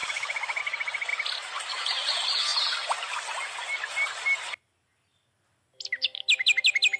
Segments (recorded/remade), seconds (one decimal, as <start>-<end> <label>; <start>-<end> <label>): 0.0-0.6 remade; 0.6-7.0 recorded